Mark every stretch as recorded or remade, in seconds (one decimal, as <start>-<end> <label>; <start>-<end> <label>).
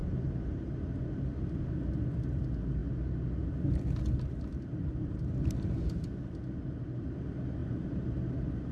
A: 0.0-7.6 recorded; 7.6-8.1 remade; 8.1-8.7 recorded